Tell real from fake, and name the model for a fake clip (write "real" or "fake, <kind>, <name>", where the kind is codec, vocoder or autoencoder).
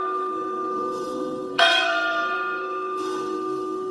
fake, codec, SNAC